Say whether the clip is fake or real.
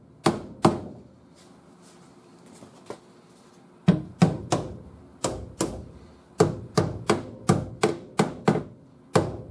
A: real